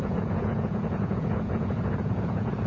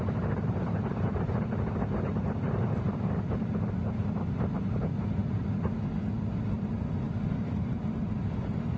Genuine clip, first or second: second